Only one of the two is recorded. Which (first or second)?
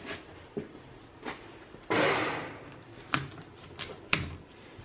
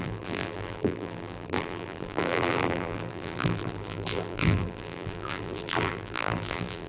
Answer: first